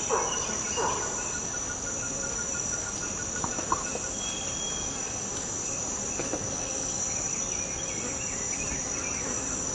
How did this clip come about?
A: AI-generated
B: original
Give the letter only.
B